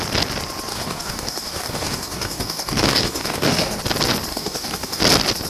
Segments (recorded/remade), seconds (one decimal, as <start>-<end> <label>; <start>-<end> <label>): 0.0-0.7 recorded; 0.7-3.8 remade; 3.8-4.3 recorded; 4.3-5.0 remade; 5.0-5.5 recorded